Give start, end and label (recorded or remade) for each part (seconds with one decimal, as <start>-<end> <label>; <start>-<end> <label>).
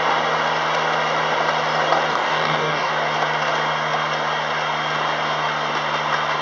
0.0-2.1 recorded; 2.1-2.9 remade; 2.9-6.4 recorded